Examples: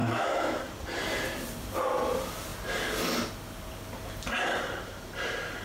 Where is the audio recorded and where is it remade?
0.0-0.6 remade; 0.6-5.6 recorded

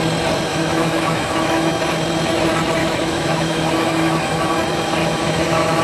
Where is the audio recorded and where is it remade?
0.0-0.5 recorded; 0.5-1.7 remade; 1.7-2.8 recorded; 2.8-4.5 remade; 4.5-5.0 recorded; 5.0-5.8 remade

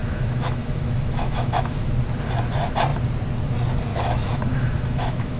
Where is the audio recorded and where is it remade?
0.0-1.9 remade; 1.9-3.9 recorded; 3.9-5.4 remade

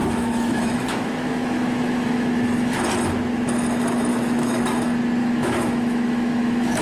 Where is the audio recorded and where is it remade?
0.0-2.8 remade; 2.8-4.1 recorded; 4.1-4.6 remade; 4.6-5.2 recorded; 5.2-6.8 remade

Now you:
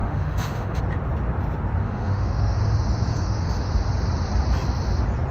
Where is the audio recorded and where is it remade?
0.0-0.8 remade; 0.8-1.8 recorded; 1.8-2.6 remade; 2.6-3.1 recorded; 3.1-3.7 remade; 3.7-5.3 recorded

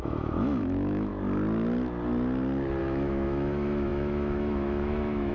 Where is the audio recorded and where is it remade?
0.0-1.1 remade; 1.1-2.8 recorded; 2.8-5.3 remade